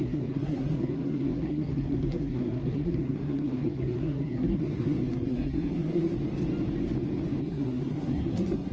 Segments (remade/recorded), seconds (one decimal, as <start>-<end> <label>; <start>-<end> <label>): 0.0-6.1 remade; 6.1-7.4 recorded; 7.4-8.7 remade